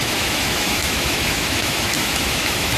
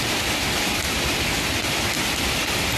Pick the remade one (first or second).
first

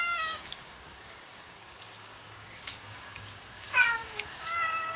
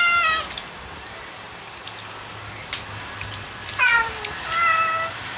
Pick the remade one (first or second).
first